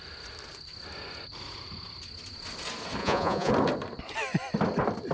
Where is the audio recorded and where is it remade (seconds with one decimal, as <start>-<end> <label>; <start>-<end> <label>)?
0.0-3.0 recorded; 3.0-3.5 remade; 3.5-5.1 recorded